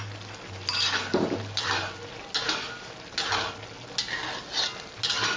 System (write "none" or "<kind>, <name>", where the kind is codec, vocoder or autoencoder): none